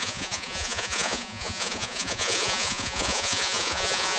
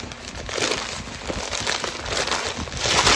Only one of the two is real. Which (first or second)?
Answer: second